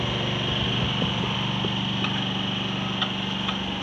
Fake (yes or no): no